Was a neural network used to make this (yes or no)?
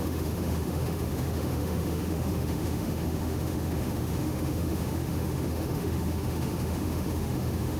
yes